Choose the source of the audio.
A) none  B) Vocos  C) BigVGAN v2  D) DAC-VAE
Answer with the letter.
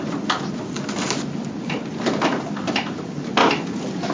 A